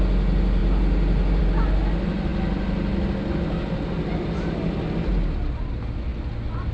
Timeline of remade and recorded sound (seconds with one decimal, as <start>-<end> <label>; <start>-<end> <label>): 0.0-6.7 recorded